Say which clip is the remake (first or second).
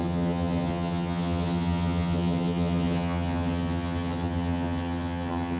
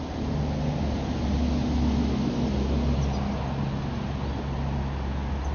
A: first